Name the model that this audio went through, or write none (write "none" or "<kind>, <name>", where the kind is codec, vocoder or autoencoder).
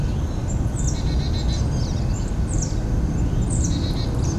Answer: none